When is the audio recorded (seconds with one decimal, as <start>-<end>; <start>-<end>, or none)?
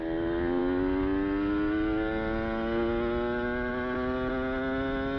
0.0-5.2